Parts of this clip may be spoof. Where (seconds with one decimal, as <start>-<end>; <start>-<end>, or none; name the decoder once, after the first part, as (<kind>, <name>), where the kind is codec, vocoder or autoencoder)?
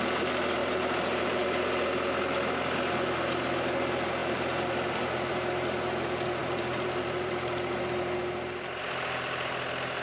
0.6-1.4 (vocoder, BigVGAN v2); 4.2-5.3; 6.4-7.8